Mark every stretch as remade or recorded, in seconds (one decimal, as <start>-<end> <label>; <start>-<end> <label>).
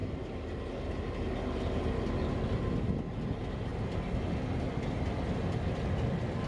0.0-6.5 recorded